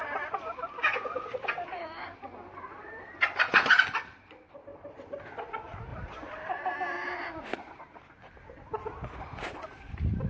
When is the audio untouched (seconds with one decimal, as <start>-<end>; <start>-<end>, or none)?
0.0-3.5; 4.3-4.7; 5.2-5.9; 6.5-10.3